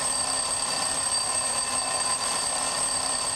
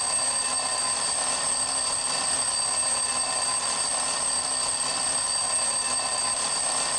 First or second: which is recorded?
second